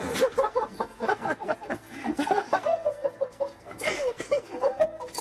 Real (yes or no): no